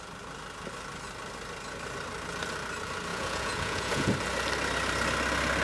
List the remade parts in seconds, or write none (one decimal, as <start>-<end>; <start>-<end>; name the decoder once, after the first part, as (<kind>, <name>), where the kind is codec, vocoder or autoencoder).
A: 3.1-4.1 (vocoder, Vocos)